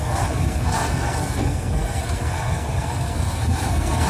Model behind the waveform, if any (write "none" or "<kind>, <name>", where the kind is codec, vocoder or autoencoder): codec, SNAC